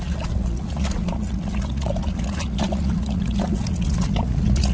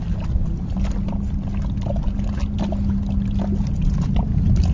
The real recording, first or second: second